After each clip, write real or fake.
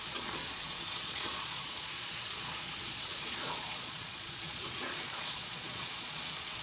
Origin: fake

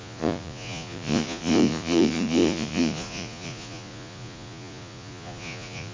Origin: fake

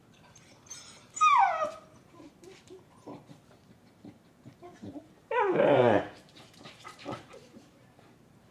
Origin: fake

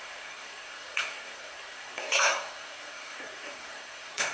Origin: fake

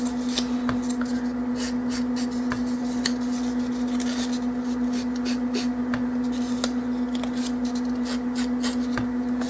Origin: real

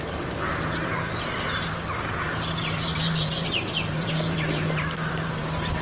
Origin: fake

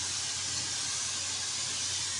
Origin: real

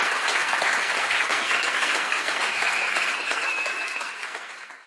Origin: fake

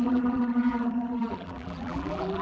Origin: fake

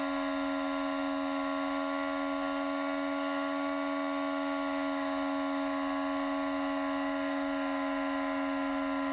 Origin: real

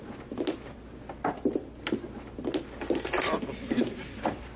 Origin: real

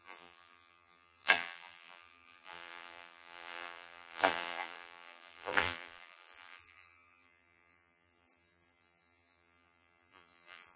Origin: fake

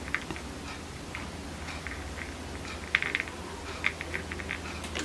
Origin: real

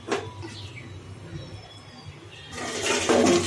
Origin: real